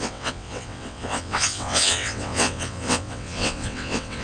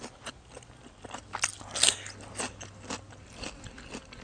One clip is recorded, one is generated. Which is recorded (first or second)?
second